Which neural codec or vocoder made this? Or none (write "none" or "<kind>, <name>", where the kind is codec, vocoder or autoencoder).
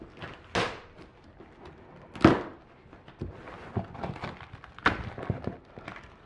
none